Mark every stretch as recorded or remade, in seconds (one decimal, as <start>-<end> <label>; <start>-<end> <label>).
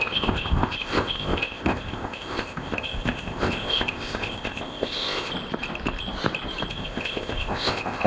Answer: 0.0-5.3 remade; 5.3-6.7 recorded; 6.7-8.1 remade